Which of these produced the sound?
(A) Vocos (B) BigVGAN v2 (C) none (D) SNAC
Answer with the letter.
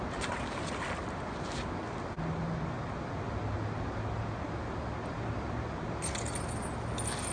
C